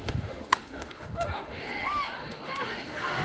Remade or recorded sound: remade